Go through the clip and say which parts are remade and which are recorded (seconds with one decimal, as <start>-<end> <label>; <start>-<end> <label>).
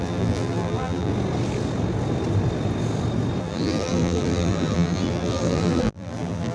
0.0-1.1 remade; 1.1-3.4 recorded; 3.4-6.5 remade